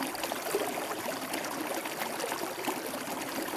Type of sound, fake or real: real